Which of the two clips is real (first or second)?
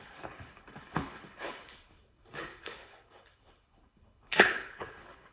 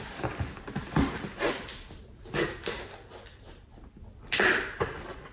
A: second